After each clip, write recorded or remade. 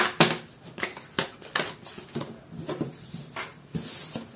recorded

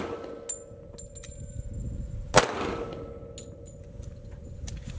recorded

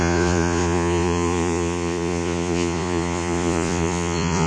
remade